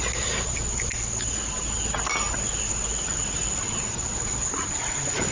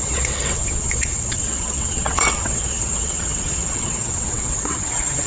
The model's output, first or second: second